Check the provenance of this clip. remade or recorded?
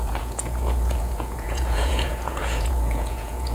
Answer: remade